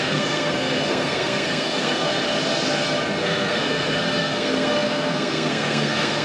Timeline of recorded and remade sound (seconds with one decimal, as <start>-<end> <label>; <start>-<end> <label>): 0.0-2.1 remade; 2.1-3.2 recorded; 3.2-6.2 remade